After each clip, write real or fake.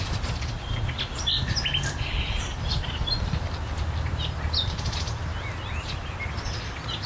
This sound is real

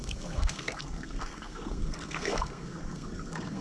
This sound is fake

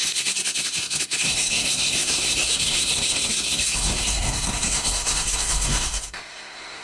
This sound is fake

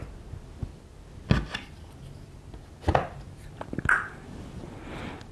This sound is real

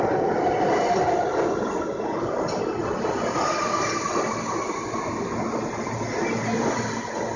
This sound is real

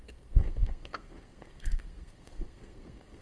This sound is fake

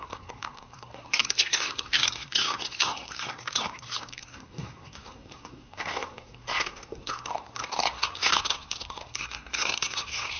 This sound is fake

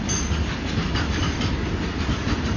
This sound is real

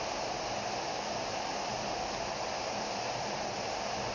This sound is real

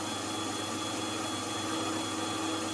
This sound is real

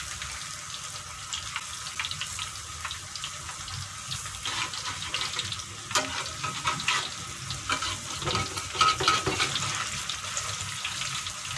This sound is real